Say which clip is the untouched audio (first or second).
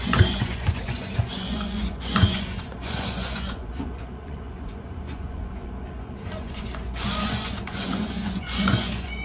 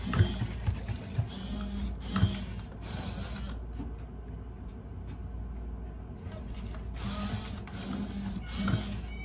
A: second